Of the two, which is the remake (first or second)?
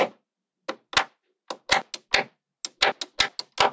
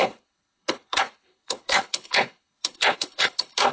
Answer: second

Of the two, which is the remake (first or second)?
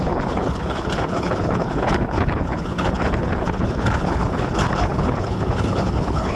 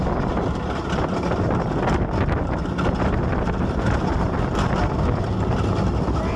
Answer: first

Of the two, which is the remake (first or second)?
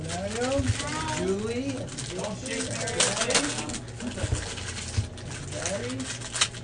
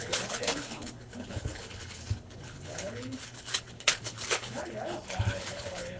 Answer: second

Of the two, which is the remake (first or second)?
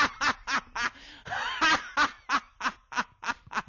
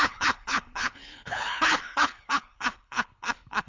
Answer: second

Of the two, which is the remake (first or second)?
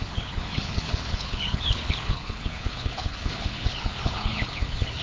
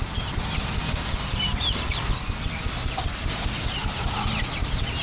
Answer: first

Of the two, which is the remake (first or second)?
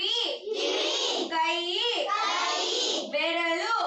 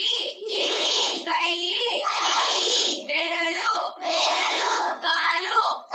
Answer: second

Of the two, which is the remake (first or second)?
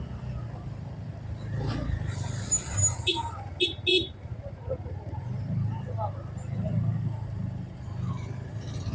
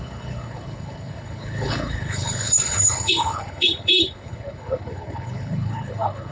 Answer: second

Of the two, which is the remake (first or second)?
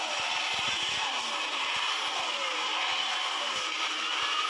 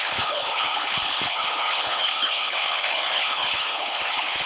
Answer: second